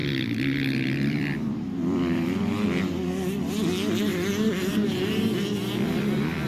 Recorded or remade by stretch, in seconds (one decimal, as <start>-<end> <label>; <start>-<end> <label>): 0.0-2.8 remade; 2.8-4.1 recorded; 4.1-6.5 remade